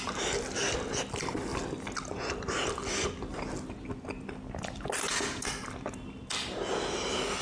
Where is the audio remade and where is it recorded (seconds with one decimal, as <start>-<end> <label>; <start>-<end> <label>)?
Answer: 0.0-7.4 recorded